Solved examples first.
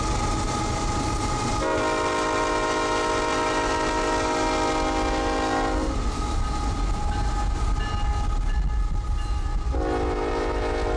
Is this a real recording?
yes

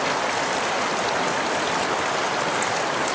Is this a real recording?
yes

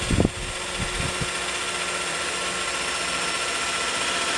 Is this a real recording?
yes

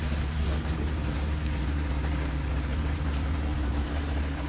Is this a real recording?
no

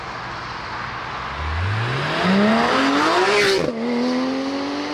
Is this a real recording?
yes